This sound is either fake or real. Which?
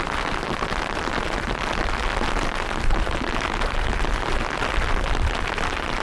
real